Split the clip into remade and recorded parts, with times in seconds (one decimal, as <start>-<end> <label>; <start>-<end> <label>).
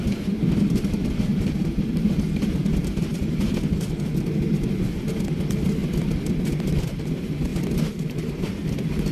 0.0-5.8 remade; 5.8-7.1 recorded; 7.1-7.5 remade; 7.5-8.3 recorded; 8.3-9.1 remade